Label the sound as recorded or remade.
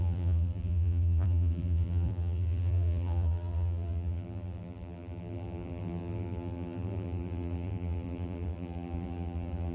remade